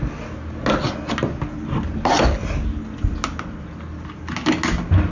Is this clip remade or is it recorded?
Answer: recorded